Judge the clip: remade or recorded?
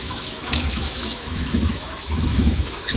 remade